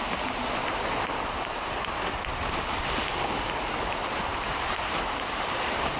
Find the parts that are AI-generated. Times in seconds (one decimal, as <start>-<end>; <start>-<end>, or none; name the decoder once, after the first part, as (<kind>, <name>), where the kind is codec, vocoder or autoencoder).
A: 0.6-2.8 (vocoder, BigVGAN v2); 4.3-6.0